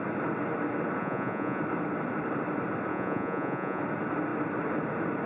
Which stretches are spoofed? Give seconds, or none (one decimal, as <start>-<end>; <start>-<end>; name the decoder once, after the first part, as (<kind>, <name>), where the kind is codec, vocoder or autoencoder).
1.0-1.6 (vocoder, Vocos); 2.9-3.8